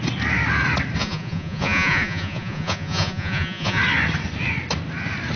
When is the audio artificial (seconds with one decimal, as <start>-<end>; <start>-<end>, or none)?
1.0-3.8